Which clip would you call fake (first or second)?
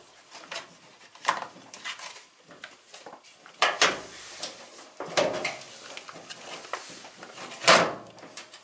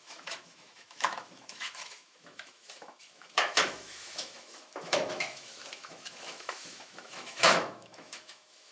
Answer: second